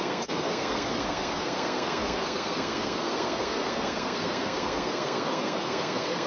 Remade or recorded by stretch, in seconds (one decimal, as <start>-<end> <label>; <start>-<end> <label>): 0.0-6.3 remade